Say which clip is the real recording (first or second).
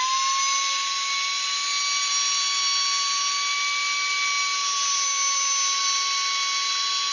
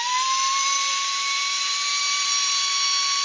first